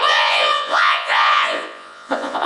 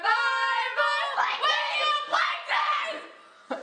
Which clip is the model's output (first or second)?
first